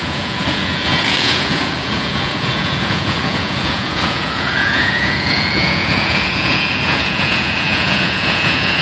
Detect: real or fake fake